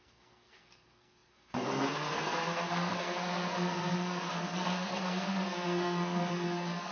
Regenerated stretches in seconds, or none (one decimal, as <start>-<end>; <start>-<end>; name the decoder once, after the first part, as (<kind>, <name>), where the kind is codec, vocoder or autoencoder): 0.0-6.9 (codec, SNAC)